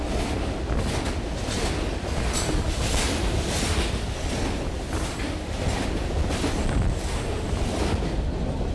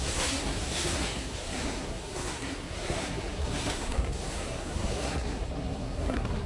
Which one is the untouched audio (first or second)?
first